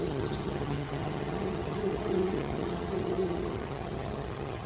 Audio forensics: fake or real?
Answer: fake